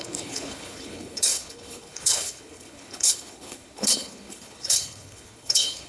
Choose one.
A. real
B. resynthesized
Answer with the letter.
B